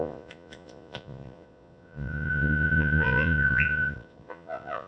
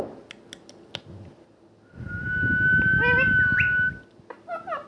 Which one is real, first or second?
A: second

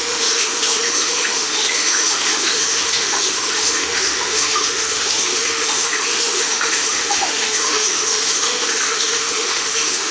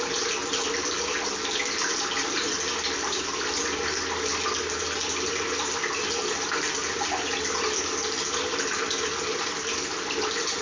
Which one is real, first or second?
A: second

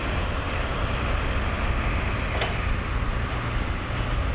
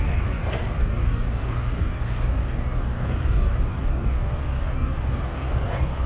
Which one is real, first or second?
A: first